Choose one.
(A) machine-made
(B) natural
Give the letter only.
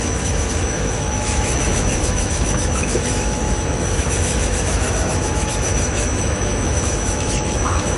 A